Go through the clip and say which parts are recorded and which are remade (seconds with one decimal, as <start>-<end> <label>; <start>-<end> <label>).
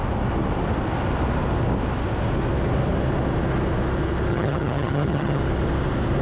0.0-4.3 recorded; 4.3-5.4 remade; 5.4-6.2 recorded